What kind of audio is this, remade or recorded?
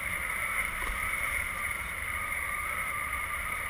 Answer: remade